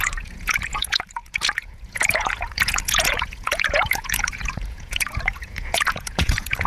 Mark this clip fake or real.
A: fake